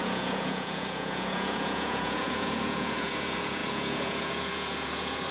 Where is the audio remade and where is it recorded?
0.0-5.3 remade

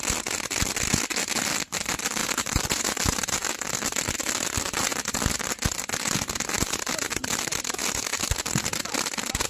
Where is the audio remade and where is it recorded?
0.0-2.2 recorded; 2.2-2.8 remade; 2.8-9.5 recorded

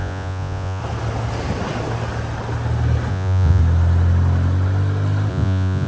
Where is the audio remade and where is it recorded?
0.0-0.8 remade; 0.8-3.1 recorded; 3.1-3.6 remade; 3.6-5.3 recorded; 5.3-5.9 remade

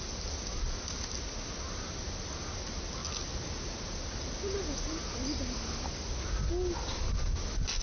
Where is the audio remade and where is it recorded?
0.0-7.8 recorded